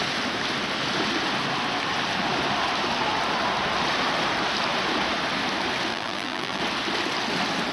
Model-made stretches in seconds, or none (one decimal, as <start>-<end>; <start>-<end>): 5.9-6.6